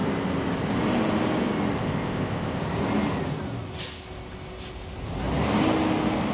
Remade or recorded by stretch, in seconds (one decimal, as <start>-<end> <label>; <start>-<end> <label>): 0.0-1.8 recorded; 1.8-2.6 remade; 2.6-6.3 recorded